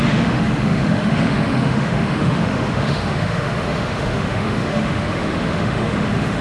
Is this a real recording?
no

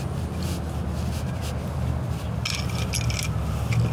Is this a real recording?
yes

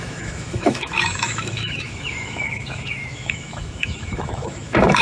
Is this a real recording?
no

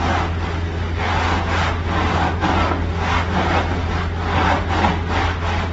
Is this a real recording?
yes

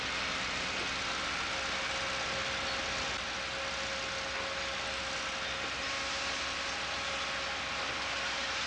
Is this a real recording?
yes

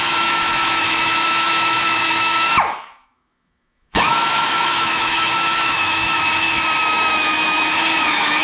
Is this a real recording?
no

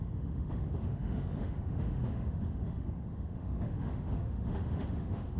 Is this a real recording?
no